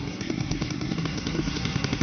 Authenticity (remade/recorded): remade